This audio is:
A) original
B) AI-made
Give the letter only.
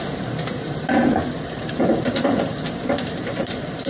B